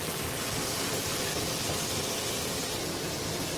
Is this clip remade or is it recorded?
recorded